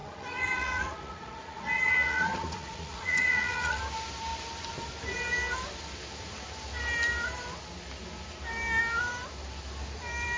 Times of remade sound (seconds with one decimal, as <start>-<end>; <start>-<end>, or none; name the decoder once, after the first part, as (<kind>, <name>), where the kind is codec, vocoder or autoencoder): 0.0-3.8 (vocoder, Vocos)